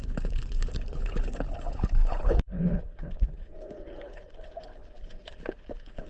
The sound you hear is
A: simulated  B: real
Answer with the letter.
A